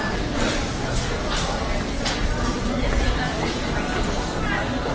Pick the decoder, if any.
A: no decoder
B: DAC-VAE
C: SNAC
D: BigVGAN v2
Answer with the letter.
D